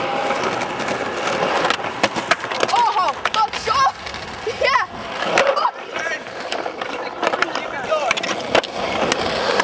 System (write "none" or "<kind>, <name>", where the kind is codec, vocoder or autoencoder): none